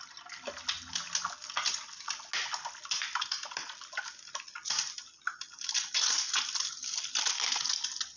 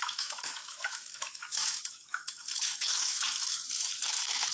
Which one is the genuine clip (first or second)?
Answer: first